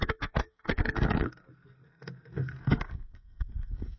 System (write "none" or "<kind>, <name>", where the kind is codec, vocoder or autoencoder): codec, SNAC